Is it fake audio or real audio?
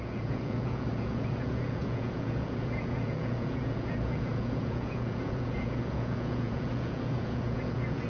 fake